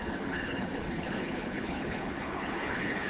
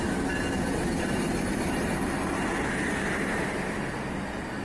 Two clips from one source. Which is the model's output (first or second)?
first